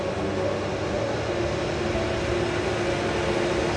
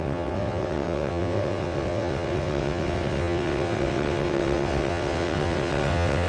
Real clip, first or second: first